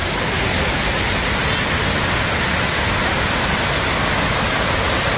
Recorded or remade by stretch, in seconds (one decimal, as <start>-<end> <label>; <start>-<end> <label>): 0.0-5.2 recorded